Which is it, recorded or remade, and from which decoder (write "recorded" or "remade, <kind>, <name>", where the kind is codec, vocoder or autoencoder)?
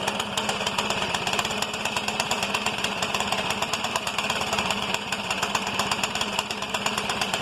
remade, vocoder, BigVGAN v2